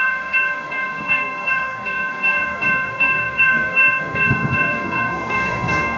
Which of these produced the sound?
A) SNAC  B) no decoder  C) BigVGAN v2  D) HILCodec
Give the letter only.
A